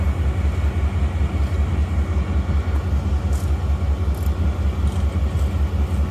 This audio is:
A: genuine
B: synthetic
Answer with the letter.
A